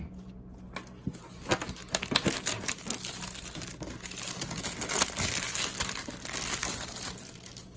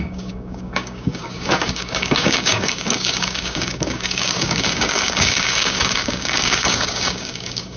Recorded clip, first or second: first